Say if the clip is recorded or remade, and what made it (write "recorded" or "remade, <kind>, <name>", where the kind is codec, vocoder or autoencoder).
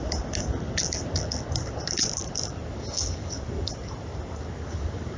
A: recorded